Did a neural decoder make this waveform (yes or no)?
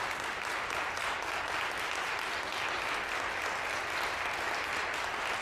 no